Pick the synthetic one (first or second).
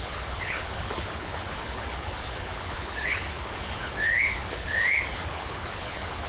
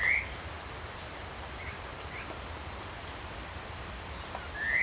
first